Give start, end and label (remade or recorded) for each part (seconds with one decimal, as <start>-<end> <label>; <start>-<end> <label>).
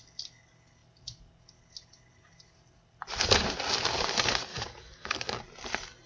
0.0-4.5 recorded; 4.5-5.4 remade; 5.4-6.1 recorded